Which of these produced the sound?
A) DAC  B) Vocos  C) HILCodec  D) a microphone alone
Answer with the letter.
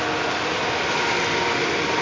D